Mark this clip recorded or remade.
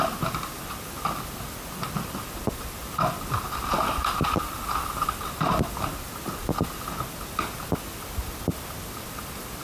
recorded